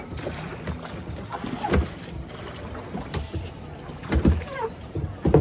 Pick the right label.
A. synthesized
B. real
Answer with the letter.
B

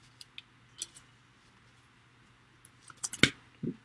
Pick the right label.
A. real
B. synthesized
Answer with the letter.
A